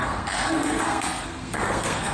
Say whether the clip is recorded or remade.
remade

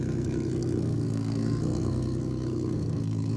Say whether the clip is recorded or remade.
remade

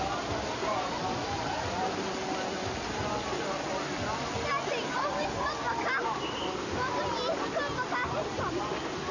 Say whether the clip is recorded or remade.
recorded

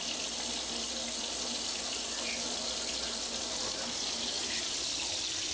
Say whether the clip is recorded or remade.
recorded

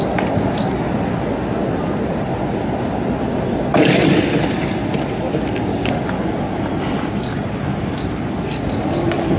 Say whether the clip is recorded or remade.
recorded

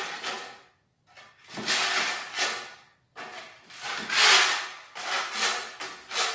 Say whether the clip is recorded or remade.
recorded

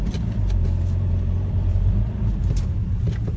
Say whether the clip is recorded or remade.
remade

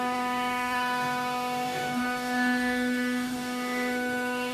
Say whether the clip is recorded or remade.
remade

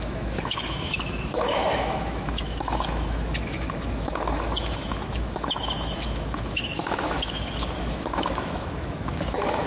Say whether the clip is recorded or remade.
remade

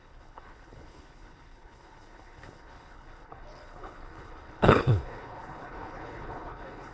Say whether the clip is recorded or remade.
remade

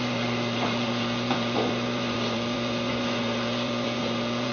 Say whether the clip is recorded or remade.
remade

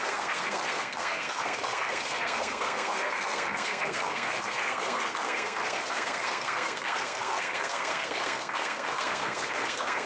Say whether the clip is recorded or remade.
remade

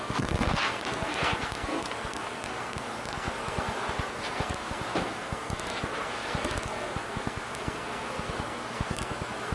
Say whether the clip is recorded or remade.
remade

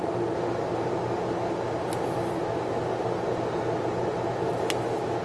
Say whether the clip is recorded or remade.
recorded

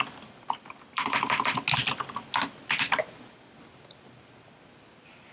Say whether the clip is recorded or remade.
recorded